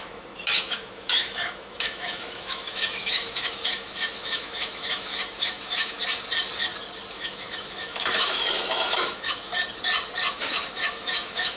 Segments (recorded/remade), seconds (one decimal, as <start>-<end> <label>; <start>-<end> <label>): 0.0-6.0 remade; 6.0-7.1 recorded; 7.1-9.5 remade; 9.5-10.3 recorded; 10.3-11.6 remade